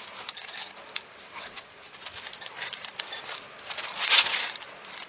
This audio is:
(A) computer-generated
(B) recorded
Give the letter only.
B